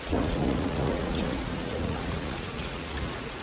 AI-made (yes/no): yes